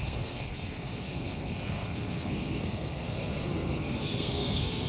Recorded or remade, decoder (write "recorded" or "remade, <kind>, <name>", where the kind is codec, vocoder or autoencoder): remade, codec, SNAC